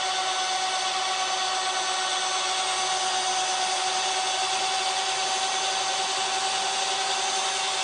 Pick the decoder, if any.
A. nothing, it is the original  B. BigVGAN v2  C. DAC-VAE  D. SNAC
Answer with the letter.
A